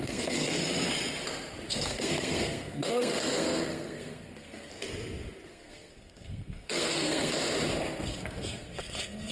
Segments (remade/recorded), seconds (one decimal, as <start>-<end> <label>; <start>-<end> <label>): 0.0-0.6 remade; 0.6-1.7 recorded; 1.7-4.7 remade; 4.7-5.5 recorded; 5.5-7.3 remade; 7.3-8.0 recorded; 8.0-9.3 remade